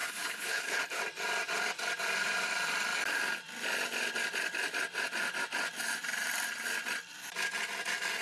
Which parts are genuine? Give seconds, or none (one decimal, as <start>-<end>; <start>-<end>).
1.0-8.2